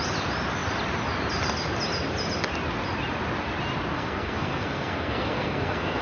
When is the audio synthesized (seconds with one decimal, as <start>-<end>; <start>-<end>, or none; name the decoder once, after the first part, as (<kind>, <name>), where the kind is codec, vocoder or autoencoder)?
3.9-6.0 (codec, SNAC)